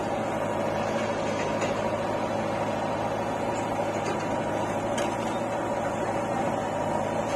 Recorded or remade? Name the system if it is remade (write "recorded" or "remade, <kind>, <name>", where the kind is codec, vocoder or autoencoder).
recorded